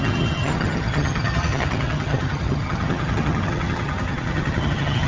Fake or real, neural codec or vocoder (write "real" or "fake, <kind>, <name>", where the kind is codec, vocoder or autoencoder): fake, vocoder, HiFi-GAN